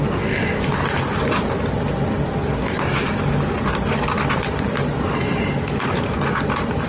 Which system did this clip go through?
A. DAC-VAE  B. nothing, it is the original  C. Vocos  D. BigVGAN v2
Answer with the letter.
B